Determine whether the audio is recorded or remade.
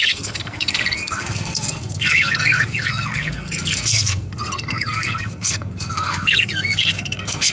remade